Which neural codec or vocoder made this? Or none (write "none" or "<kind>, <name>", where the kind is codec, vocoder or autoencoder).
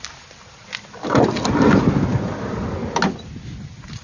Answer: none